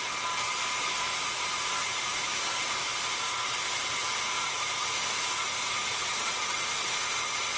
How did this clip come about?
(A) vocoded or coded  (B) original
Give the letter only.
B